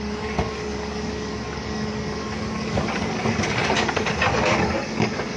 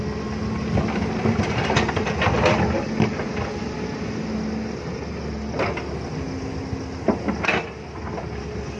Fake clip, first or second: first